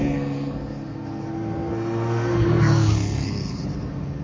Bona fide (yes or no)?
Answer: no